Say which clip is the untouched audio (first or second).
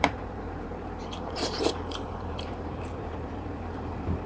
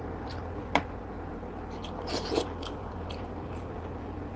second